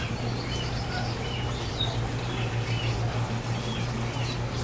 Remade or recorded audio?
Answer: recorded